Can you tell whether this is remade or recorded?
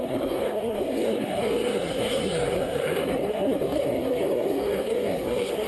remade